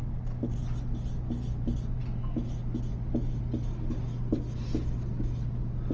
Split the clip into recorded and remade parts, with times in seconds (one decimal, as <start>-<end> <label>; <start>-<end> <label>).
0.0-5.9 recorded